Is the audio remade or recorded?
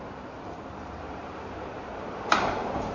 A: remade